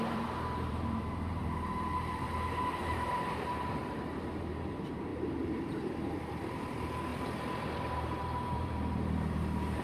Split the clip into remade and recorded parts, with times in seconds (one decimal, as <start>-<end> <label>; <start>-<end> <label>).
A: 0.0-1.4 remade; 1.4-2.8 recorded; 2.8-9.8 remade